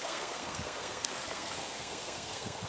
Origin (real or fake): fake